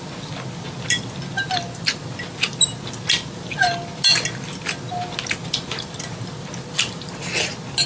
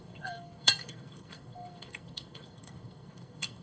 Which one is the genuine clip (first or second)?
first